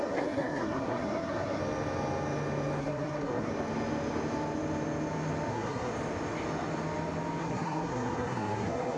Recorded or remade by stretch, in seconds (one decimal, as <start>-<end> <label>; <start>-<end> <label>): 0.0-1.6 remade; 1.6-2.8 recorded; 2.8-3.5 remade; 3.5-5.5 recorded; 5.5-5.9 remade; 5.9-7.4 recorded; 7.4-9.0 remade

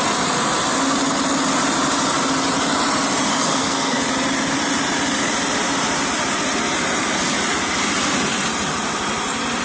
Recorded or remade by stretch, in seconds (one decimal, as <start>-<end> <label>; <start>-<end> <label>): 0.0-3.3 recorded; 3.3-4.0 remade; 4.0-9.6 recorded

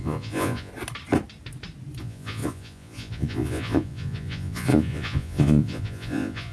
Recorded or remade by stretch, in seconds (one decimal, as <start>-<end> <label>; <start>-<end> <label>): 0.0-0.7 remade; 0.7-2.0 recorded; 2.0-6.5 remade